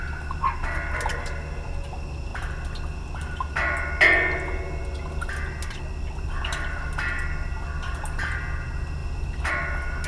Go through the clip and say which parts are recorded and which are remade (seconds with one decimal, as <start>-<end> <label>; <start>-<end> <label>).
0.0-9.0 recorded; 9.0-9.5 remade; 9.5-10.1 recorded